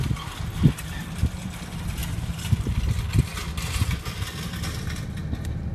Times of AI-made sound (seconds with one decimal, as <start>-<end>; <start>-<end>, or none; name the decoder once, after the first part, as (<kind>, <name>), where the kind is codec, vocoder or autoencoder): 2.0-2.8 (vocoder, BigVGAN v2)